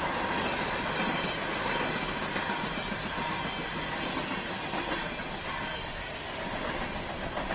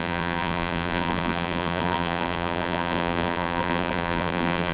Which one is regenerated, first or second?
second